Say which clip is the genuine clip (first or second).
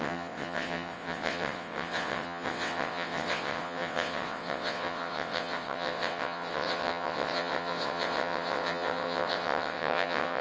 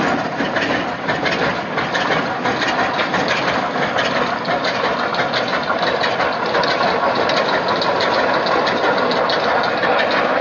second